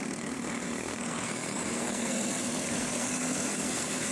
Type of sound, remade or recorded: remade